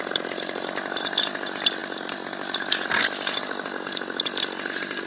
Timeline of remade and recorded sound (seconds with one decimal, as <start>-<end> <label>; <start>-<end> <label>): 0.0-5.1 recorded